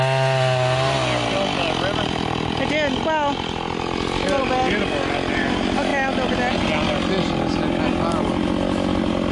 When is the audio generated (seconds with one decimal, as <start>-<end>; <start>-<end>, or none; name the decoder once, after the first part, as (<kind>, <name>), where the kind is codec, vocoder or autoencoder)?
none